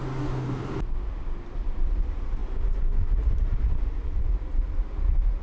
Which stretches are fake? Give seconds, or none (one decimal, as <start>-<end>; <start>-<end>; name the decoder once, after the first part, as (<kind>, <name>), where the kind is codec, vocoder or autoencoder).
0.0-0.6 (codec, DAC)